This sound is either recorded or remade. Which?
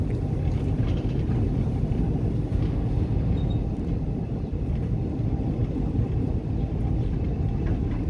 recorded